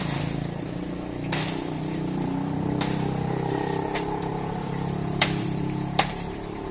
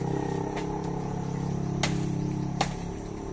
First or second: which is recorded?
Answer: second